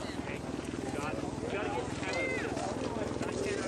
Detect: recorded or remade recorded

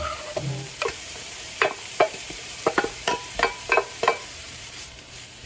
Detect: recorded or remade remade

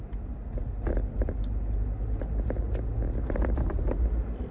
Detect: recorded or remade recorded